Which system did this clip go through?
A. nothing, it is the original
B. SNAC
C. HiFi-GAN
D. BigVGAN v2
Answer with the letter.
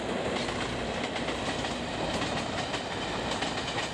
A